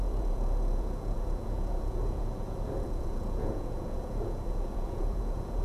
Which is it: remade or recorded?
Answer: remade